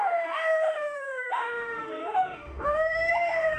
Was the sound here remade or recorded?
remade